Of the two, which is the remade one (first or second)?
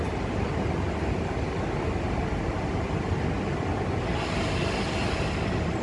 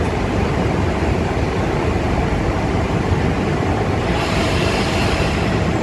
second